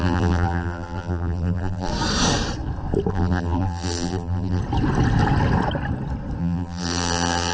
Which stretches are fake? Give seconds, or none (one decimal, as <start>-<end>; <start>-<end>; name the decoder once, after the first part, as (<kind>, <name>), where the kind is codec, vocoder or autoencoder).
0.0-1.9 (vocoder, BigVGAN v2); 3.1-4.6; 6.4-7.5